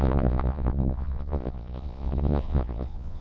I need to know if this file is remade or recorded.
remade